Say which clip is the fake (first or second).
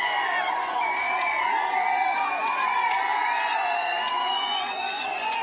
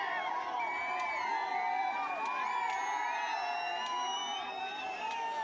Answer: first